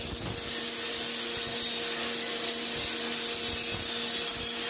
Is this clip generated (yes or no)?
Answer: no